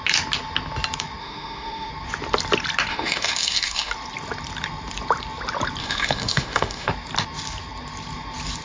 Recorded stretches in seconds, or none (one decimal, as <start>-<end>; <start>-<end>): 0.0-1.2; 1.9-2.9; 3.9-5.8; 6.9-8.6